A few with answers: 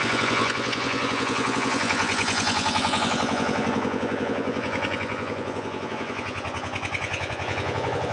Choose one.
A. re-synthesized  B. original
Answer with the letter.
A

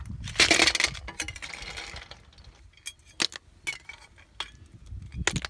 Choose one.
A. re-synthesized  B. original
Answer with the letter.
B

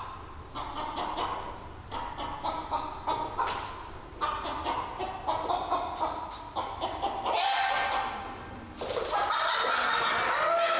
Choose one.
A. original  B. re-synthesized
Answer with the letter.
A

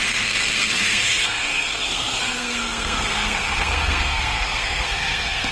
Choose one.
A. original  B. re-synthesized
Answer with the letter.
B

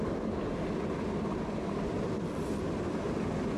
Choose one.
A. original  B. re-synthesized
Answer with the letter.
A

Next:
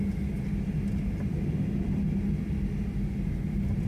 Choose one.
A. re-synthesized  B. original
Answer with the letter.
B